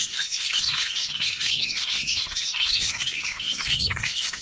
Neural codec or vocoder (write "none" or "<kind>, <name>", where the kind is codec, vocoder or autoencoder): codec, SNAC